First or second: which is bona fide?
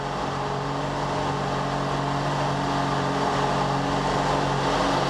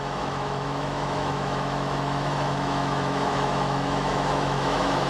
first